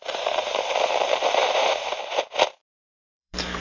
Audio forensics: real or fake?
fake